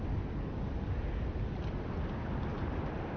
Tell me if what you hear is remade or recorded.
recorded